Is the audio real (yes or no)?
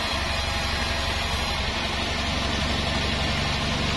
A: yes